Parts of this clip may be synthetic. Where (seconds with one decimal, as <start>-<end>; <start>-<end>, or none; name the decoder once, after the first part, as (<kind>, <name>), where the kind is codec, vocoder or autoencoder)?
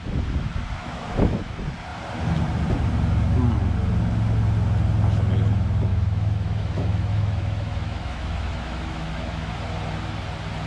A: 0.8-1.5 (autoencoder, DAC-VAE); 5.9-9.5